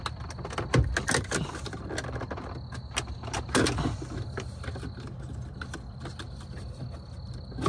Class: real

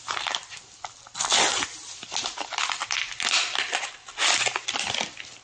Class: real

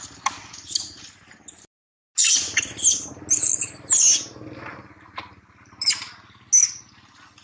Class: real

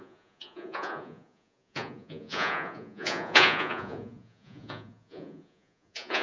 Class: fake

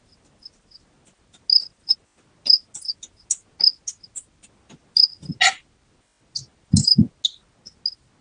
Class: real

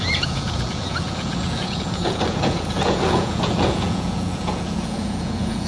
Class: fake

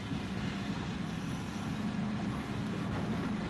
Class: real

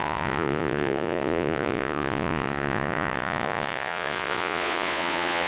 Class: fake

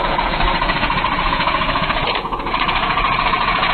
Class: fake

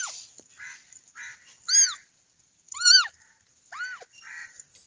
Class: real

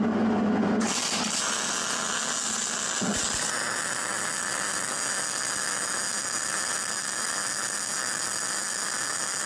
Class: real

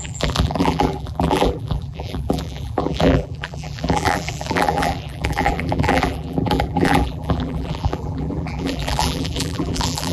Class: fake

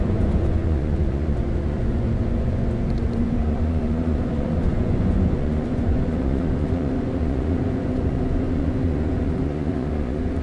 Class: fake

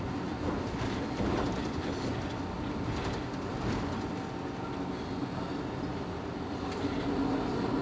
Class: real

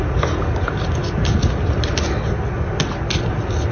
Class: real